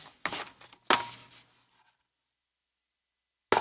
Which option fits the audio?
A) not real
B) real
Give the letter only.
B